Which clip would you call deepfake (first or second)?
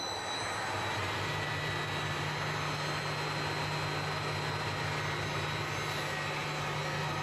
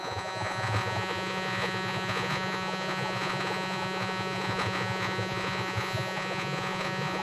second